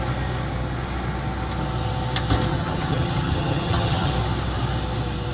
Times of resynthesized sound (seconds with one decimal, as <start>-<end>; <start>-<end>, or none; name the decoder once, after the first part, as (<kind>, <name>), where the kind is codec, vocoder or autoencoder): 2.5-4.1 (vocoder, HiFi-GAN)